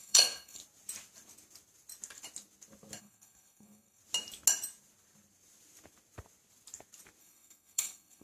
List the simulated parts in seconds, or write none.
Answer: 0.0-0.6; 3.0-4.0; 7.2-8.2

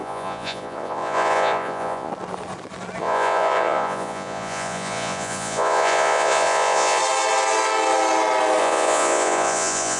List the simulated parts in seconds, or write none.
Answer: 0.0-2.1; 3.0-7.0; 8.6-10.0

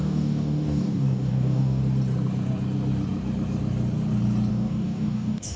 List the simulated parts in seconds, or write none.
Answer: 0.0-1.8; 4.5-5.6

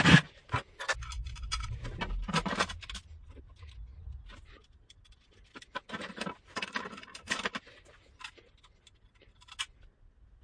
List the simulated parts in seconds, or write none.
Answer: none

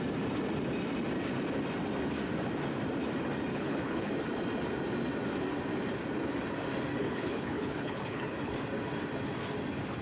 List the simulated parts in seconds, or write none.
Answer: 3.5-4.1; 7.0-8.5

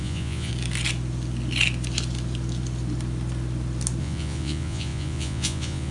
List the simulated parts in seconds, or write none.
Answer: 0.0-0.5; 4.0-5.9